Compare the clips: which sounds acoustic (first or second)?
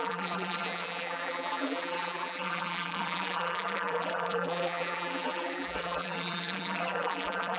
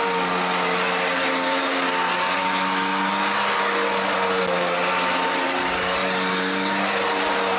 second